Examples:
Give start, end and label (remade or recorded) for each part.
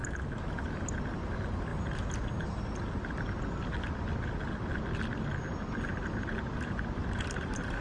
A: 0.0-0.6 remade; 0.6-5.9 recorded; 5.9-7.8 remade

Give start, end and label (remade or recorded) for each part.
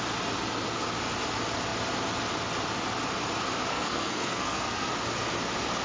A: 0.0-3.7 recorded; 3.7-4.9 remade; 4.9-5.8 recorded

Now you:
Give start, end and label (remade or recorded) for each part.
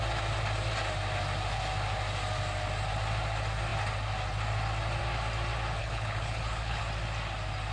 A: 0.0-5.8 recorded; 5.8-6.8 remade; 6.8-7.7 recorded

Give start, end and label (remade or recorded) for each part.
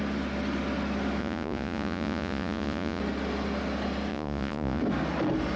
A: 0.0-1.2 recorded; 1.2-3.0 remade; 3.0-4.1 recorded; 4.1-4.8 remade; 4.8-5.6 recorded